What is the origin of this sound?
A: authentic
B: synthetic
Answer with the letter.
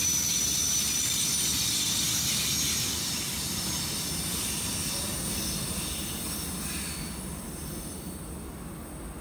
A